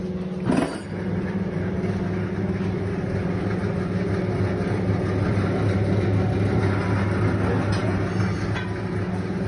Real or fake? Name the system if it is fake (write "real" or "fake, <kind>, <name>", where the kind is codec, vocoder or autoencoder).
real